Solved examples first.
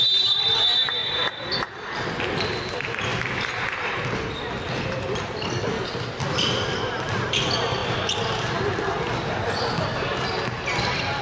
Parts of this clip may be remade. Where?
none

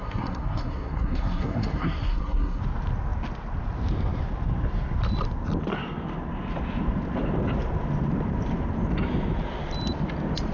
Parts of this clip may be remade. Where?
0.0-2.6 (codec, SNAC)

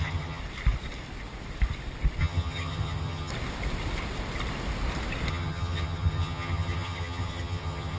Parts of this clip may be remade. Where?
0.0-0.4 (vocoder, HiFi-GAN); 2.2-3.3; 5.3-8.0

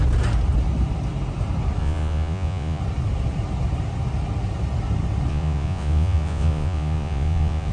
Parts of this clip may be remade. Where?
1.8-2.8 (vocoder, Vocos); 5.3-7.7

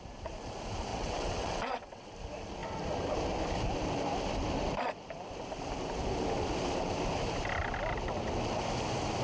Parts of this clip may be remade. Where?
0.9-2.1 (vocoder, WaveNeXt)

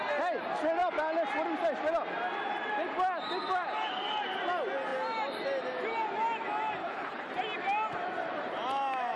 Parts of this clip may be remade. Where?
6.8-7.3 (codec, HILCodec)